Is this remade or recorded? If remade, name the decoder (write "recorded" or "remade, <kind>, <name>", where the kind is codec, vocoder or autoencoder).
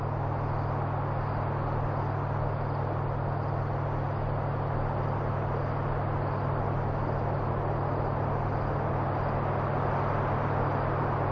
recorded